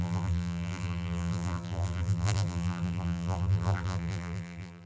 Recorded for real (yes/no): no